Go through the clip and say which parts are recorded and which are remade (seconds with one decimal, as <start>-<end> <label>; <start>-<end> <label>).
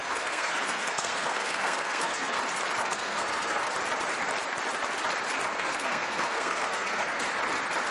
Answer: 0.0-2.4 remade; 2.4-2.8 recorded; 2.8-3.7 remade; 3.7-5.5 recorded; 5.5-7.2 remade; 7.2-7.9 recorded